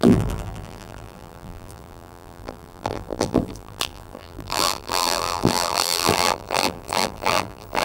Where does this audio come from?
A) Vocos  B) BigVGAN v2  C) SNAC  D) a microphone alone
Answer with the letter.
B